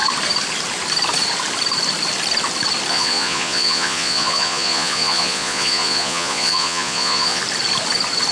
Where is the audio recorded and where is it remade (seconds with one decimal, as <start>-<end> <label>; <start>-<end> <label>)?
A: 0.0-2.9 recorded; 2.9-7.4 remade; 7.4-8.3 recorded